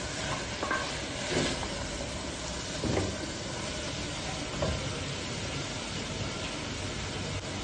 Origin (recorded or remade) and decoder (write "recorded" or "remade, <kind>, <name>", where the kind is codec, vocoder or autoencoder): recorded